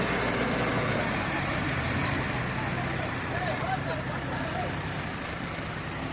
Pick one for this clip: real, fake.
fake